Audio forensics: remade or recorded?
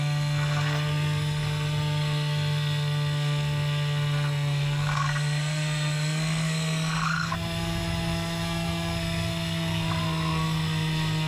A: remade